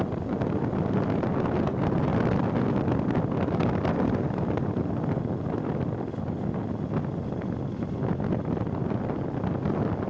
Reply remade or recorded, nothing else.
recorded